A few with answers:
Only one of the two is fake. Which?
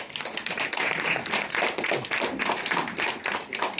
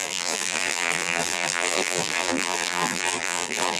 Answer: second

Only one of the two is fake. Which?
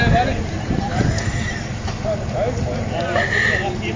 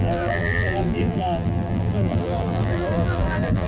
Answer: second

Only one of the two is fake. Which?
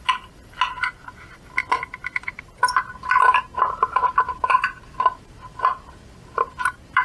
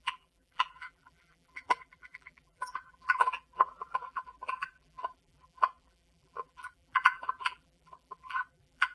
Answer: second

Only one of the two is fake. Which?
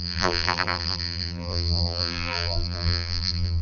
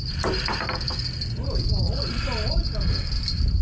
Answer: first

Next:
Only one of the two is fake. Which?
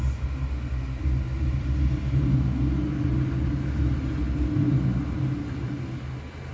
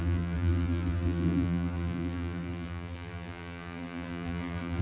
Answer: second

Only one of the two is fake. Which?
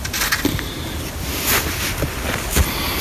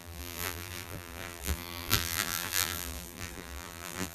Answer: second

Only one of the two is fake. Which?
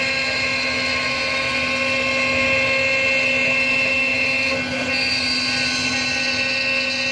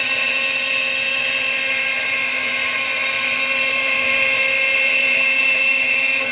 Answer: second